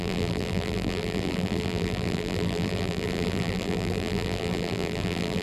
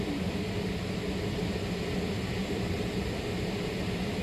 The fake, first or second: first